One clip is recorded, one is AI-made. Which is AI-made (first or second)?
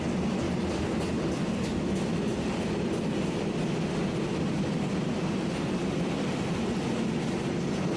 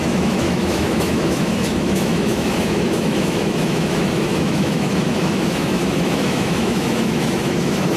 second